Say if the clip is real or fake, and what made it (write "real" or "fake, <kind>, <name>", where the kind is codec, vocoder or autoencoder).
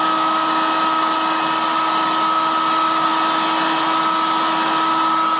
real